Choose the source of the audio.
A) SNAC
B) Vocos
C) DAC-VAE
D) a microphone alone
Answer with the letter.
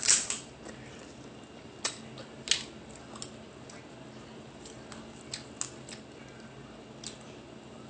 D